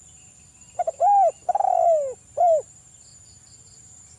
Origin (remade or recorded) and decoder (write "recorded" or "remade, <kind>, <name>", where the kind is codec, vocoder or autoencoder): recorded